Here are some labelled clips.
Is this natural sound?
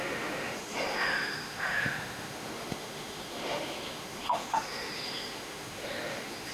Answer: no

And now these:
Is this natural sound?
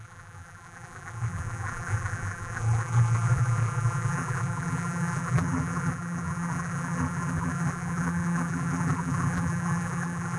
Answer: no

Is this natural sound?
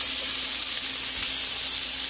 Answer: yes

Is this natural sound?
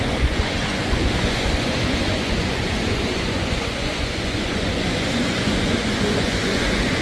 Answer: no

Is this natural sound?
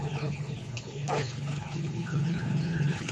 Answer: no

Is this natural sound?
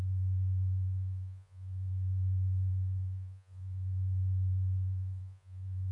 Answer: no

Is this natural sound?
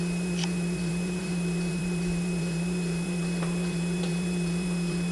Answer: no